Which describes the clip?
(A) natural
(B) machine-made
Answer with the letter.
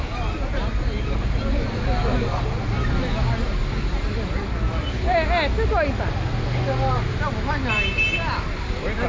A